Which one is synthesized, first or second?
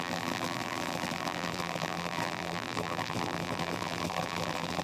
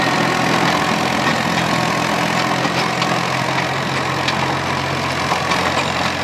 first